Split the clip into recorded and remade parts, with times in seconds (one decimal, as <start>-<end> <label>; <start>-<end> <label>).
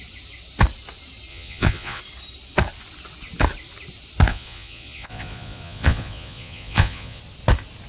0.0-1.3 recorded; 1.3-2.0 remade; 2.0-4.3 recorded; 4.3-7.2 remade; 7.2-7.9 recorded